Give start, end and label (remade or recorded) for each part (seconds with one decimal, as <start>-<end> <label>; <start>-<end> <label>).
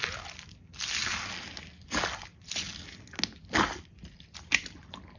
0.0-5.2 recorded